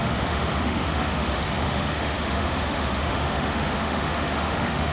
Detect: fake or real fake